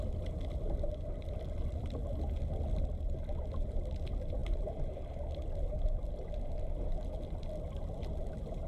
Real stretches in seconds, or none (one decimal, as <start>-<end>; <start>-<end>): 0.0-8.7